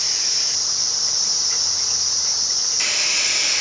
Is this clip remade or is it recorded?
recorded